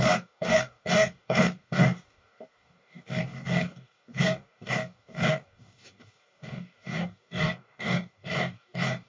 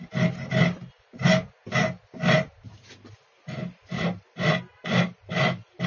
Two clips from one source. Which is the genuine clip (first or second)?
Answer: second